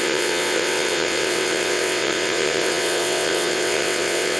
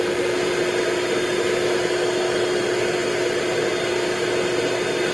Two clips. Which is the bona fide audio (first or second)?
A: second